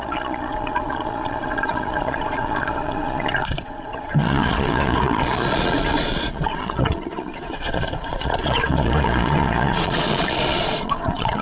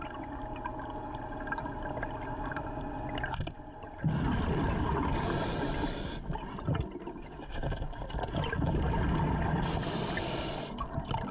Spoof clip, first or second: first